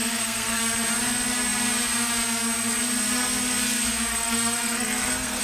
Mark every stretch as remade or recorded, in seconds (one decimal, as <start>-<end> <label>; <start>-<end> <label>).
0.0-0.6 remade; 0.6-4.1 recorded; 4.1-5.4 remade